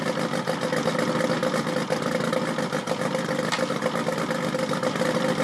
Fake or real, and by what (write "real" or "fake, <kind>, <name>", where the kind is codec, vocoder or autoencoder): real